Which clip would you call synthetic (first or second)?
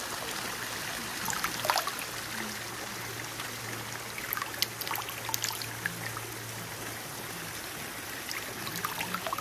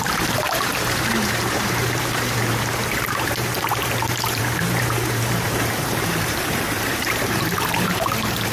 second